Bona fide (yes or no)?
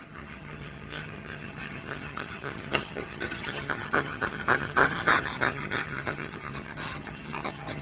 no